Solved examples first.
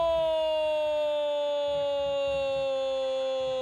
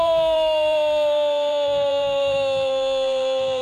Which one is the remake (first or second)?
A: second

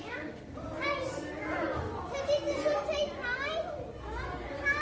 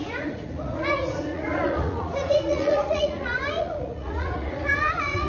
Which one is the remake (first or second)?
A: second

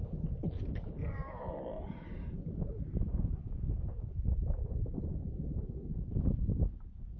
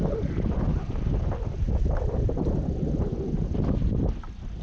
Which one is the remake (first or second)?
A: first